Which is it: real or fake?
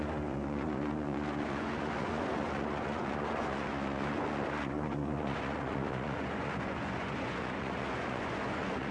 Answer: fake